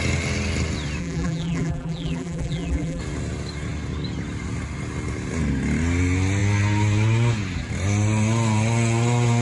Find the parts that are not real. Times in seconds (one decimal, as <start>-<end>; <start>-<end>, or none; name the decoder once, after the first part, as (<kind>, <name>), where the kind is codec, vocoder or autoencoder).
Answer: 1.0-3.0 (vocoder, BigVGAN v2)